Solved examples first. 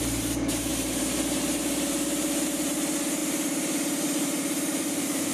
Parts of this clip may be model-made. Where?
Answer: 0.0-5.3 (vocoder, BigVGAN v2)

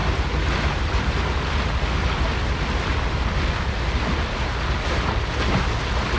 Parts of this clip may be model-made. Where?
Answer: none